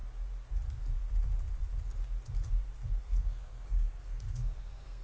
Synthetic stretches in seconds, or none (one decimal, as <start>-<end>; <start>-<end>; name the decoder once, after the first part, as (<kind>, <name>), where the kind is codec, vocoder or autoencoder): 3.0-5.0 (codec, SNAC)